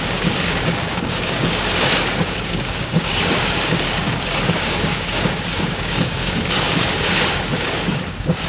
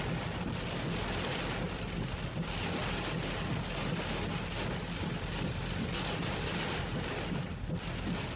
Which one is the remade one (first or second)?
first